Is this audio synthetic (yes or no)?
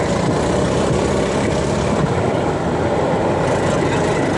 yes